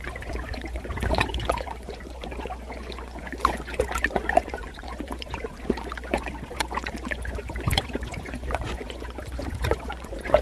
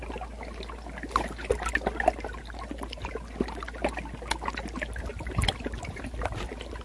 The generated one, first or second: first